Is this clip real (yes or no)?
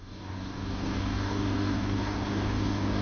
no